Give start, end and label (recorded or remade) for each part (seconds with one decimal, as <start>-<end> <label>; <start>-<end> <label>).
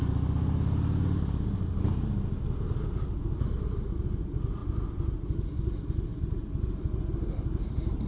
0.0-8.1 recorded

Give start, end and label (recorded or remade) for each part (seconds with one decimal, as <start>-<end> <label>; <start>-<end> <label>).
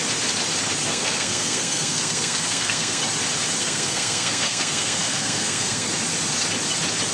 0.0-0.9 recorded; 0.9-3.0 remade; 3.0-3.6 recorded; 3.6-5.9 remade; 5.9-7.1 recorded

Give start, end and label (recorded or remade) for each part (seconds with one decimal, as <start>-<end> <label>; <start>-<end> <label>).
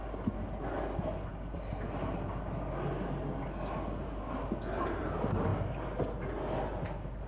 0.0-7.3 recorded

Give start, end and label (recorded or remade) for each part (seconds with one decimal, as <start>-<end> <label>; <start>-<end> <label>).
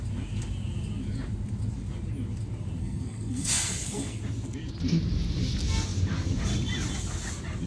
0.0-2.8 recorded; 2.8-4.2 remade; 4.2-7.7 recorded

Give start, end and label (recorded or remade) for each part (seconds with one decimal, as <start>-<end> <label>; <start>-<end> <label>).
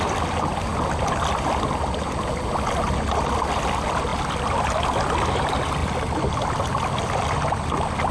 0.0-8.1 recorded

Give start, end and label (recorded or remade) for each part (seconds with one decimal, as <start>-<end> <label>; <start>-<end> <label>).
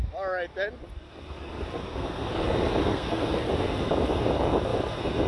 0.0-1.8 recorded; 1.8-2.3 remade; 2.3-2.8 recorded; 2.8-3.5 remade; 3.5-5.3 recorded